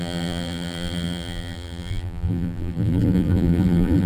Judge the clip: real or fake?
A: fake